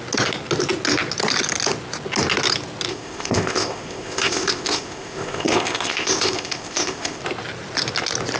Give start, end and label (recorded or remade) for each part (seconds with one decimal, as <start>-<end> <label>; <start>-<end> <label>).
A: 0.0-2.9 recorded; 2.9-7.2 remade; 7.2-8.4 recorded